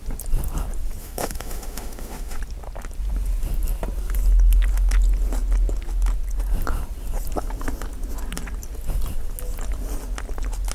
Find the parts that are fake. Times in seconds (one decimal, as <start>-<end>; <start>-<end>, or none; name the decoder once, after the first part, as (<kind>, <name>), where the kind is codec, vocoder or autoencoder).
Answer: 1.0-2.4 (autoencoder, DAC-VAE)